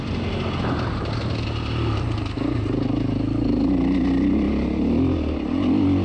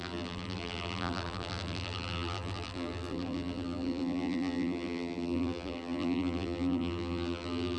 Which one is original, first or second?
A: first